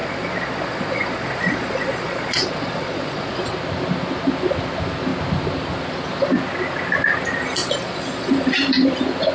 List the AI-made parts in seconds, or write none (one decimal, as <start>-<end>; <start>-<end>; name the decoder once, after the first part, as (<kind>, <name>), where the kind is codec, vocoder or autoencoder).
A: 0.0-3.5 (vocoder, Vocos); 7.6-8.3